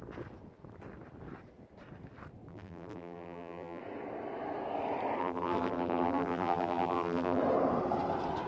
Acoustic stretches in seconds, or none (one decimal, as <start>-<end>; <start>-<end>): 0.0-2.5; 3.8-5.2; 7.4-8.5